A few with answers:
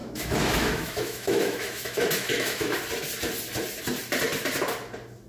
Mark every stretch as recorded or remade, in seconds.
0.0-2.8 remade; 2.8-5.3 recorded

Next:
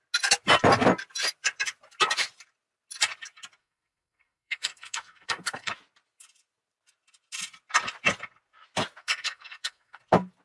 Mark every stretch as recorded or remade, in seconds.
0.0-3.6 recorded; 3.6-5.7 remade; 5.7-9.0 recorded; 9.0-10.0 remade; 10.0-10.4 recorded

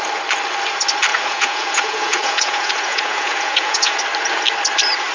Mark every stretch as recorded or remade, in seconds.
0.0-1.1 recorded; 1.1-4.0 remade; 4.0-5.1 recorded

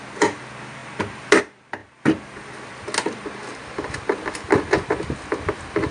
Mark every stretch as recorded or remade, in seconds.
0.0-5.9 recorded

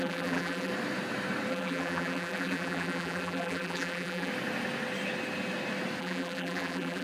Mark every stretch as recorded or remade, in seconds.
0.0-0.7 remade; 0.7-1.5 recorded; 1.5-4.3 remade; 4.3-6.0 recorded; 6.0-7.0 remade

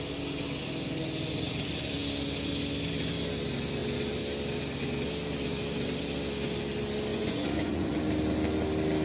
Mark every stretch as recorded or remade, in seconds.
0.0-7.1 recorded; 7.1-8.0 remade; 8.0-9.0 recorded

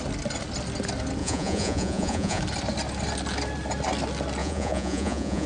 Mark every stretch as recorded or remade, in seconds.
0.0-1.2 recorded; 1.2-2.4 remade; 2.4-4.4 recorded; 4.4-5.5 remade